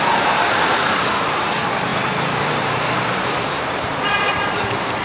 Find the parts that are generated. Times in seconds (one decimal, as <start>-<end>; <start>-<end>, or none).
0.0-5.0